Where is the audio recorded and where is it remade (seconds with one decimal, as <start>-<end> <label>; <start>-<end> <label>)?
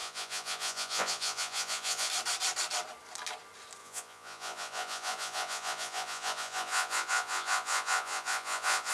0.0-2.1 remade; 2.1-3.8 recorded; 3.8-8.9 remade